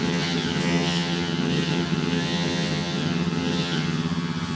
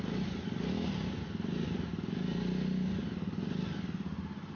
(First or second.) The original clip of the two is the second